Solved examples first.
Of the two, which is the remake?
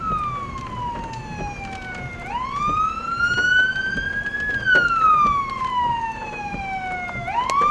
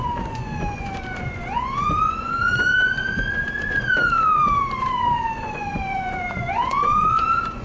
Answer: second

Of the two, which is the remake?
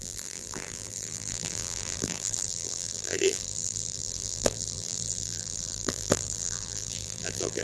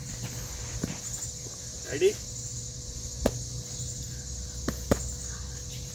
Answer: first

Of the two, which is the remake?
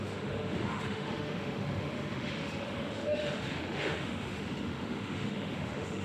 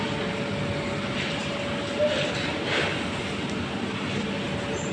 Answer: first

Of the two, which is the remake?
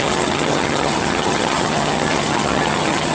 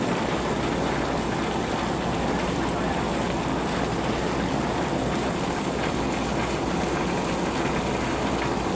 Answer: first